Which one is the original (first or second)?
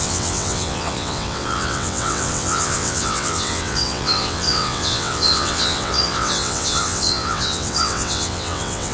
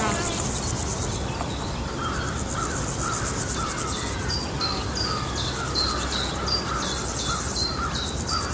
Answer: second